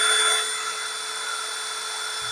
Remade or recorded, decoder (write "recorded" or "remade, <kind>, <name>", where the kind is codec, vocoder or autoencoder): recorded